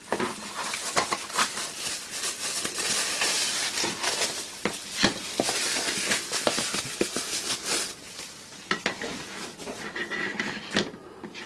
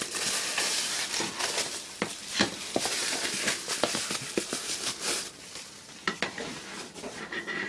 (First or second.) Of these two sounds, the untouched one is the first